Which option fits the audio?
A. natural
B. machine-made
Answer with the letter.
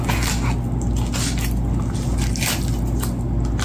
A